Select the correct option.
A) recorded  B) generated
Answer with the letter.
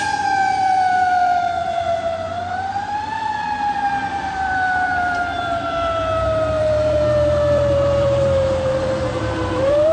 B